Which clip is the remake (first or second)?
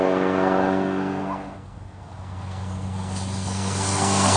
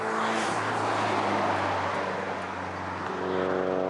first